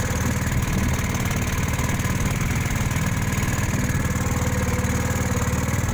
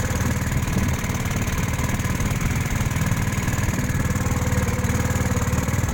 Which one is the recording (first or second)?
first